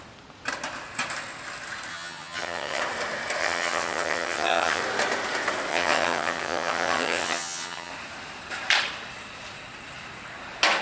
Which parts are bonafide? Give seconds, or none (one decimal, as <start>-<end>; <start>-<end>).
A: 0.0-1.9; 2.8-3.4; 4.8-5.7; 7.9-10.8